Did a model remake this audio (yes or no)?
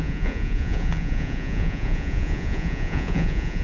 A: yes